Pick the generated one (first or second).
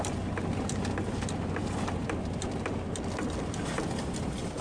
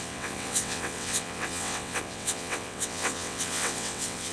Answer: second